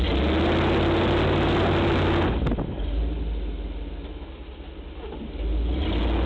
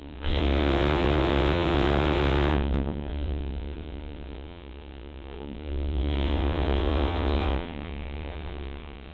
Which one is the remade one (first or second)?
second